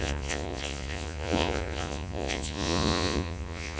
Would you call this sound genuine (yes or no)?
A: no